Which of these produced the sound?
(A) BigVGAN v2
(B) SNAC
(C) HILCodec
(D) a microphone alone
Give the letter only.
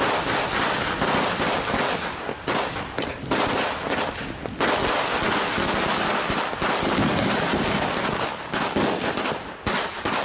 D